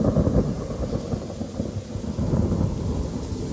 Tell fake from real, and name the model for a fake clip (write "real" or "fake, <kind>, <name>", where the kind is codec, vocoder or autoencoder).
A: real